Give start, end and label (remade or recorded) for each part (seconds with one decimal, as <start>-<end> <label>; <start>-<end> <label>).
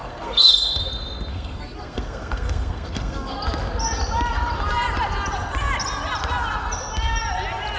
0.0-0.8 remade; 0.8-1.3 recorded; 1.3-3.4 remade; 3.4-7.8 recorded